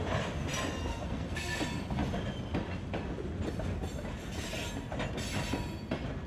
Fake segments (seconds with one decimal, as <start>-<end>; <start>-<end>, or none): 0.9-1.6